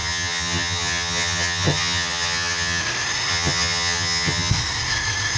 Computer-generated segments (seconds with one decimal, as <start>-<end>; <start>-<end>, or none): 0.0-2.8; 3.3-4.5